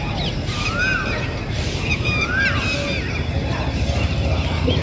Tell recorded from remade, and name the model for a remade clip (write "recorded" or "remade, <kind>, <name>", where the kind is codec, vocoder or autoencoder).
recorded